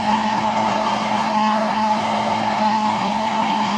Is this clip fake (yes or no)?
yes